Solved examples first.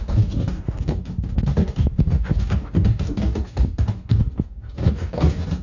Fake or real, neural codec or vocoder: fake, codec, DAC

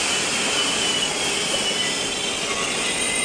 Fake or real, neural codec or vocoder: real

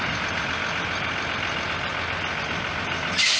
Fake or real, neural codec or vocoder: real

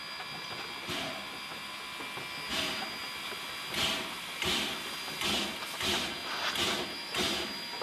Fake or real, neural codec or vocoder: real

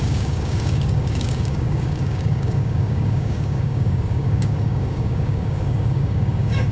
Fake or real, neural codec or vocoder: fake, codec, DAC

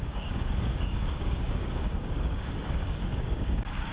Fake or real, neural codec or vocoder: fake, codec, DAC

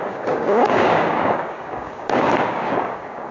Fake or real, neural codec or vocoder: fake, codec, DAC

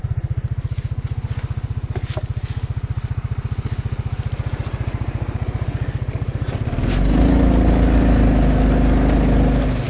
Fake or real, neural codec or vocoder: real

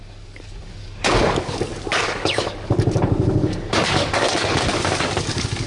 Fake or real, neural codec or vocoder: fake, codec, DAC